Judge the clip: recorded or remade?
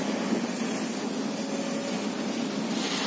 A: recorded